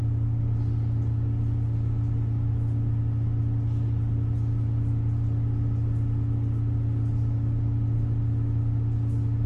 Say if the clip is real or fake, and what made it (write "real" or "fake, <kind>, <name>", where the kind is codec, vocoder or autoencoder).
real